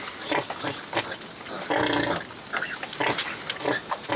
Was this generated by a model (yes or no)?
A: no